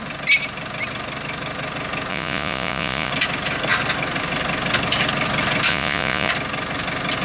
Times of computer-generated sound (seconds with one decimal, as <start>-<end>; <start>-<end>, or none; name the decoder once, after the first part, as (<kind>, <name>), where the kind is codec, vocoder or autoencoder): 2.1-3.1 (vocoder, Vocos); 5.7-6.3